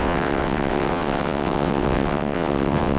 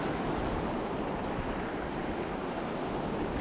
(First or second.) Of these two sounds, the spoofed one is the first